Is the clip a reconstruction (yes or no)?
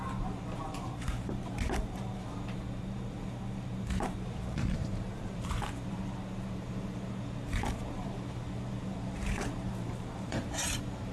yes